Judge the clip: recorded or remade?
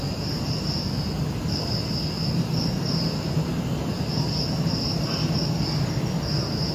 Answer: recorded